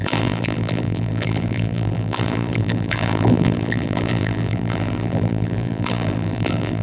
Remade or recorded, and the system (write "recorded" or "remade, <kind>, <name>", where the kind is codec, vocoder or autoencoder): remade, vocoder, BigVGAN v2